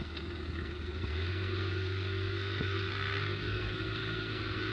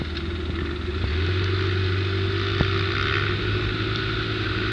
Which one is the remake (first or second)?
first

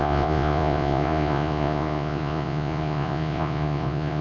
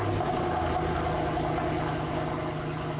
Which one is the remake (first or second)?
first